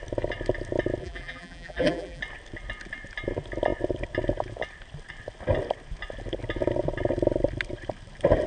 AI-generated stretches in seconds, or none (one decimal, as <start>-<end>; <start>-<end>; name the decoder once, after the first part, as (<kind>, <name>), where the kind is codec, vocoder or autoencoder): 1.0-2.2 (vocoder, BigVGAN v2)